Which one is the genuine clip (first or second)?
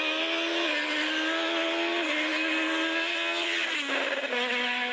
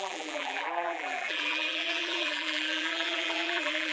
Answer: first